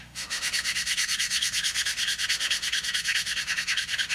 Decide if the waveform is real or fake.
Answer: fake